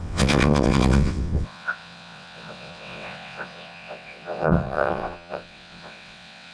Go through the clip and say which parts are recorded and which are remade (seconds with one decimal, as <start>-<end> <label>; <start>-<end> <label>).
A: 0.0-6.5 remade